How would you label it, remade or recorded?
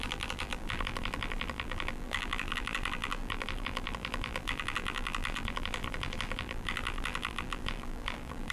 remade